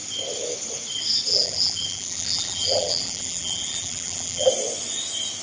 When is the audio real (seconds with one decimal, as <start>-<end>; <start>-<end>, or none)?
0.0-1.3; 4.5-5.4